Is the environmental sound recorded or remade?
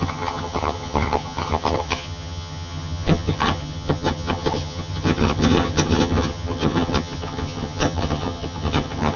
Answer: remade